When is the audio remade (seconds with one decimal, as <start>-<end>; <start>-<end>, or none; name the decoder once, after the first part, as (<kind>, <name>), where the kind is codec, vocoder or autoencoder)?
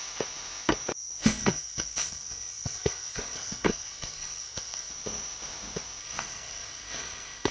1.2-4.9 (codec, SNAC); 6.0-7.5